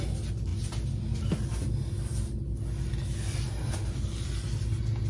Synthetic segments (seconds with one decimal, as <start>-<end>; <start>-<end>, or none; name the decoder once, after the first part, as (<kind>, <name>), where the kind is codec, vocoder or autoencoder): none